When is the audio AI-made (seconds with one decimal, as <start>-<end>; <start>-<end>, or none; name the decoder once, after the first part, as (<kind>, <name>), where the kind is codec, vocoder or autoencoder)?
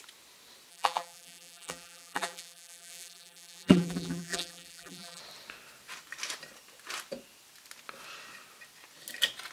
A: 0.7-5.2 (vocoder, BigVGAN v2)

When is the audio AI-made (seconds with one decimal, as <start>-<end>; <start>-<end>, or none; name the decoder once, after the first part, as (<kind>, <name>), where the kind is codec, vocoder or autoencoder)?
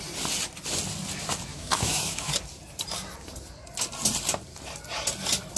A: 1.5-2.3 (autoencoder, DAC-VAE)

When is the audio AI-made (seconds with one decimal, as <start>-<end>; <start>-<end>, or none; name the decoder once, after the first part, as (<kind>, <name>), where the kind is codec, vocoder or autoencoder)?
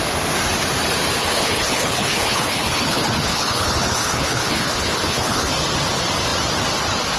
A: 1.2-5.5 (codec, HILCodec)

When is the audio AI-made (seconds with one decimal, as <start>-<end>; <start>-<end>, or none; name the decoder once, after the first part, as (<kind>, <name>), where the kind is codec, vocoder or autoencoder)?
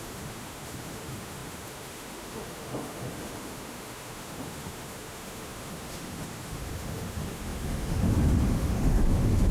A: 0.0-9.5 (autoencoder, DAC-VAE)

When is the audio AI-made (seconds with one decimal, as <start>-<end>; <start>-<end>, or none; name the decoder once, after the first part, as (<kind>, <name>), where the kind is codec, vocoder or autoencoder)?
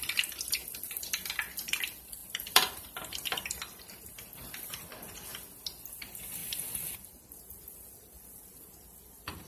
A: 0.0-5.3 (vocoder, BigVGAN v2); 6.0-6.4; 9.1-9.5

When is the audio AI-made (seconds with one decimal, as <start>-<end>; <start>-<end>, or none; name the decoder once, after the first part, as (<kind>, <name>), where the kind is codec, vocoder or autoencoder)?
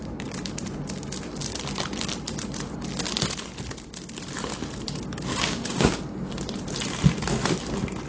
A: 5.3-6.0 (codec, DAC)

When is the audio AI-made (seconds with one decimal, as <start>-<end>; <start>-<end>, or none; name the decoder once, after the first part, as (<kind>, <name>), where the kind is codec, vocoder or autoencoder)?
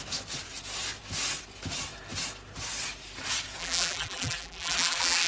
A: 3.6-5.3 (vocoder, BigVGAN v2)